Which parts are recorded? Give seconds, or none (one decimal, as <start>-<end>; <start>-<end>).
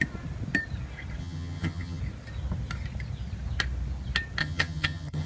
0.0-1.2; 2.0-4.4